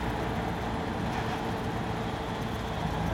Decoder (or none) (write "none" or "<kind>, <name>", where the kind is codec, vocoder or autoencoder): none